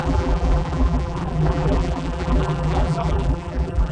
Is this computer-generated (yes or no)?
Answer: yes